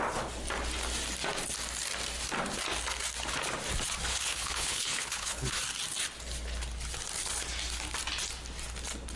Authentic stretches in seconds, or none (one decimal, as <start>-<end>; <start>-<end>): 0.0-4.1; 5.6-9.2